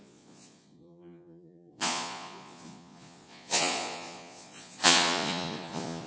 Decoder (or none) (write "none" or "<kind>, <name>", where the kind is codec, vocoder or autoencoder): vocoder, Vocos